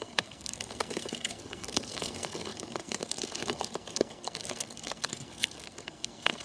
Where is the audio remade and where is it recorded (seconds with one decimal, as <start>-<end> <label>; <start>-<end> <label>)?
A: 0.0-6.4 remade